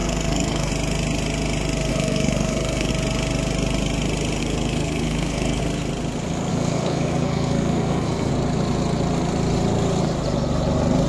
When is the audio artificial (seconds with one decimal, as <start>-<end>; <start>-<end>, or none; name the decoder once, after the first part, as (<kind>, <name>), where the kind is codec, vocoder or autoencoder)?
0.0-0.7 (codec, SNAC); 1.9-2.9; 4.4-5.6; 6.5-8.3